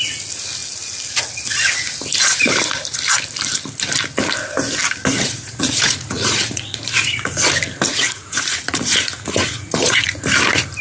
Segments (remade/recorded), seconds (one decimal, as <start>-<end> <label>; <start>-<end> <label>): 0.0-5.2 recorded; 5.2-7.5 remade; 7.5-7.9 recorded; 7.9-10.2 remade; 10.2-10.8 recorded